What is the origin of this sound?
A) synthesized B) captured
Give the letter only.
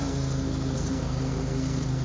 A